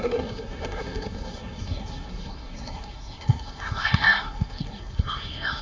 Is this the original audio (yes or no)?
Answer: no